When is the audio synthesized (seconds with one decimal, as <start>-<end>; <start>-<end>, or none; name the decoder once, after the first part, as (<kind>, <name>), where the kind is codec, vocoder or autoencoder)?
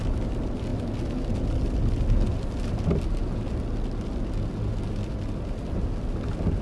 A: none